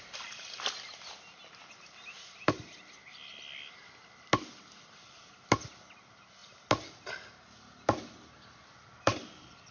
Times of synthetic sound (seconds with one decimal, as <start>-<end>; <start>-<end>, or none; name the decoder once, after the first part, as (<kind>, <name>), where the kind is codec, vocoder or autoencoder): none